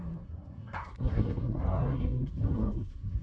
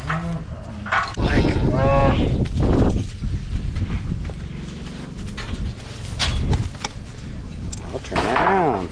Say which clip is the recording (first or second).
second